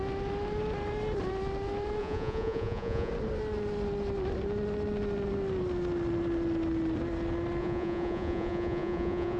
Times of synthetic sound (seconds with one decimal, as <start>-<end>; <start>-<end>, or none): 2.0-3.1; 7.6-9.4